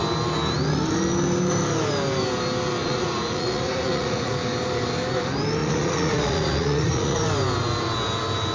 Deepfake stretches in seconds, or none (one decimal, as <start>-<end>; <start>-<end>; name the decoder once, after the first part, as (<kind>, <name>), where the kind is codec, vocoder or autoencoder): 2.8-4.3 (vocoder, Vocos); 5.6-7.2